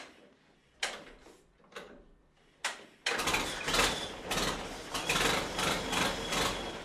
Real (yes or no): yes